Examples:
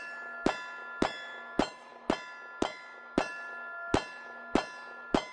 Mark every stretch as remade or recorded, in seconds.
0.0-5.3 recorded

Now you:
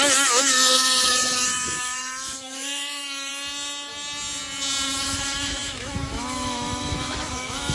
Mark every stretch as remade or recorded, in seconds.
0.0-3.3 remade; 3.3-5.0 recorded; 5.0-7.7 remade

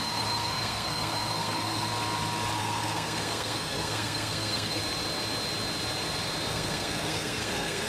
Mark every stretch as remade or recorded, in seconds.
0.0-1.9 remade; 1.9-2.6 recorded; 2.6-4.8 remade; 4.8-6.5 recorded; 6.5-7.9 remade

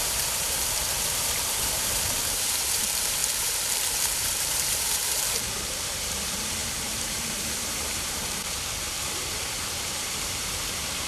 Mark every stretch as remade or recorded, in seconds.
0.0-11.1 remade